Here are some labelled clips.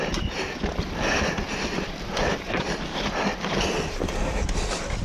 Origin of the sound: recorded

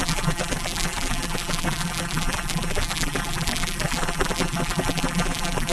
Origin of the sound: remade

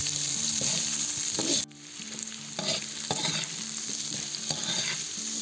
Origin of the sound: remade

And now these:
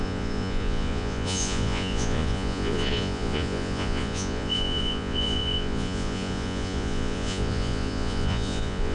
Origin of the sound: remade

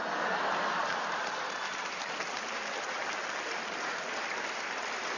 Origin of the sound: recorded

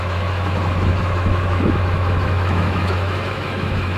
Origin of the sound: remade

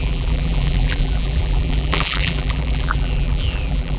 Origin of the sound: remade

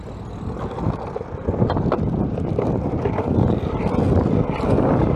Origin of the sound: recorded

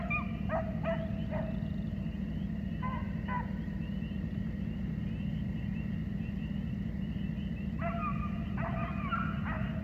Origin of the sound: recorded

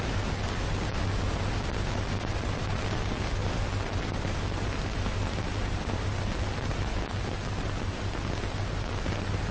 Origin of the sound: recorded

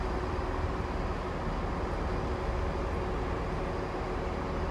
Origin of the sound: recorded